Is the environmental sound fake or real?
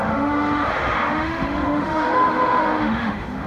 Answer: fake